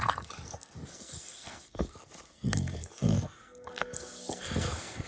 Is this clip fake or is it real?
fake